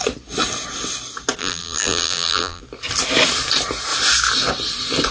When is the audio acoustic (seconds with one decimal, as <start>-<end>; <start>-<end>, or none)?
0.0-1.4; 2.6-5.1